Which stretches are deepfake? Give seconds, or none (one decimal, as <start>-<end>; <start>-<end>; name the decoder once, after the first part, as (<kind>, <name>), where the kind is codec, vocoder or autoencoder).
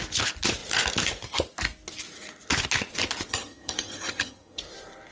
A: 3.3-4.6 (vocoder, HiFi-GAN)